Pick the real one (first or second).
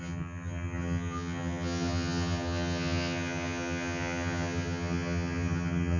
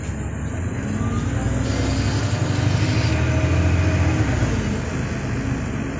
second